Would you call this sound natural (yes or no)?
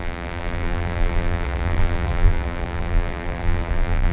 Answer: no